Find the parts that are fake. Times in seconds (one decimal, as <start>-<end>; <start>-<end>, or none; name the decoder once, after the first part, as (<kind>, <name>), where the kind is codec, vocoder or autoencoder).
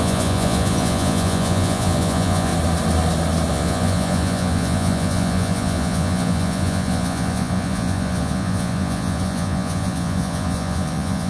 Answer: 0.0-2.5 (vocoder, Vocos); 3.5-11.3